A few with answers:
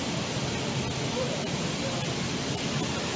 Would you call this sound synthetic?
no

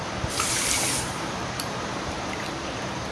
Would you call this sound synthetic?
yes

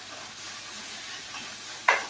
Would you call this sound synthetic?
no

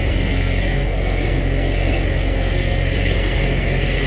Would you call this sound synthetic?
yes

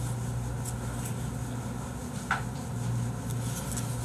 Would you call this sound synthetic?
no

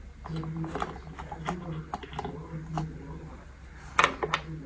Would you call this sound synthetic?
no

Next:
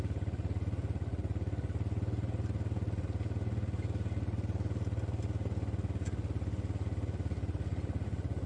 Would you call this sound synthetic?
no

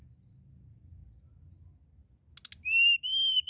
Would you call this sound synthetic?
no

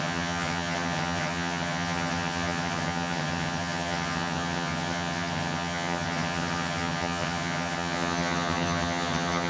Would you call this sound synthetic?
yes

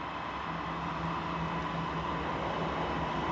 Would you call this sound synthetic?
no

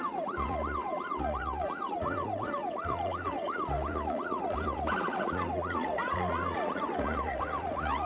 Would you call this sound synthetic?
yes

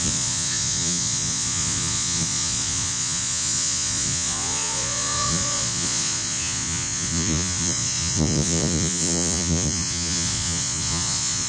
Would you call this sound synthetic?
yes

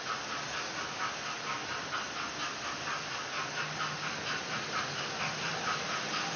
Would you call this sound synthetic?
no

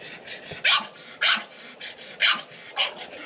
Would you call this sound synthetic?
no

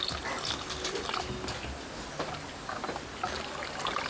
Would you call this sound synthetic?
no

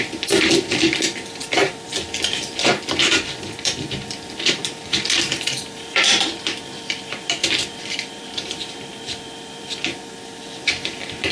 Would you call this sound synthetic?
yes